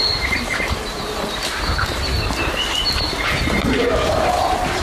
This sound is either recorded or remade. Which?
remade